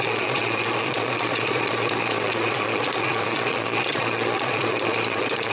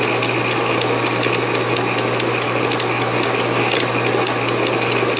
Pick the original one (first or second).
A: second